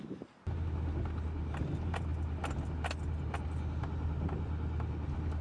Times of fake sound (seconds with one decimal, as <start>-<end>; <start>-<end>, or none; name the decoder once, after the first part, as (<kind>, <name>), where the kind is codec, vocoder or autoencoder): none